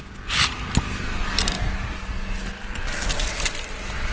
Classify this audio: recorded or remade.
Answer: recorded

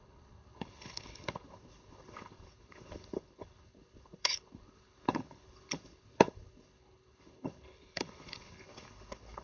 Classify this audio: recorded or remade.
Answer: remade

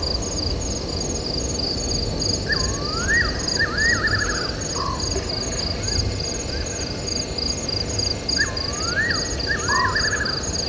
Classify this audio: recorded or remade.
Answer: recorded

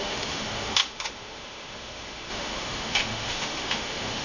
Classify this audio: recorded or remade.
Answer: remade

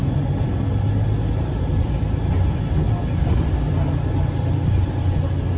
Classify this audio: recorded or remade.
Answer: recorded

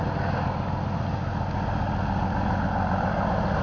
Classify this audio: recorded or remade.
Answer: recorded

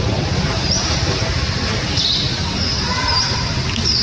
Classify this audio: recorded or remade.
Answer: recorded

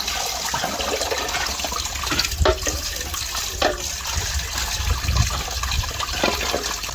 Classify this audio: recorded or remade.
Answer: recorded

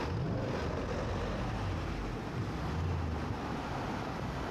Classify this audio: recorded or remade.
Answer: recorded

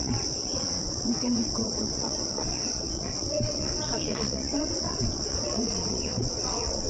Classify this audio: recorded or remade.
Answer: remade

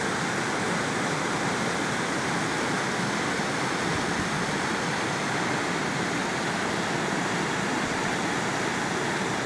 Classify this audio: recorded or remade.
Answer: recorded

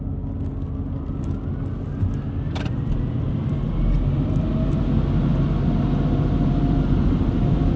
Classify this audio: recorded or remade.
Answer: recorded